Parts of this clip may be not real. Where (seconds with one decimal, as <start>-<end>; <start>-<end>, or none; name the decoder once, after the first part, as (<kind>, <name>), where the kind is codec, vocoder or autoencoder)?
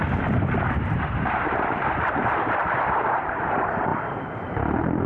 none